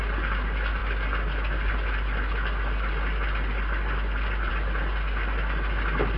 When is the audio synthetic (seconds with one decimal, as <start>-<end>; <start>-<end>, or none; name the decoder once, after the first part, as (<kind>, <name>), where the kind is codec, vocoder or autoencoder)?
none